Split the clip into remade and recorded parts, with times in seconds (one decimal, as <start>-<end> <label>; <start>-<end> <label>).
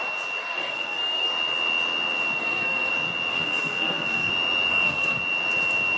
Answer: 0.0-0.4 recorded; 0.4-1.3 remade; 1.3-2.4 recorded; 2.4-2.9 remade; 2.9-3.3 recorded; 3.3-4.3 remade; 4.3-4.7 recorded; 4.7-5.2 remade; 5.2-6.0 recorded